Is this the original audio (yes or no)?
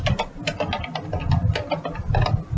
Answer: yes